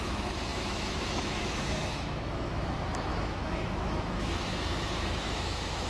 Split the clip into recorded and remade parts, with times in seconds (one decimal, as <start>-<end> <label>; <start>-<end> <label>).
0.0-5.9 remade